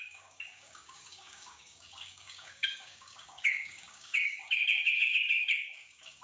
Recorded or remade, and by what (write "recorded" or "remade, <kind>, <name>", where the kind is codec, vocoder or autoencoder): remade, codec, DAC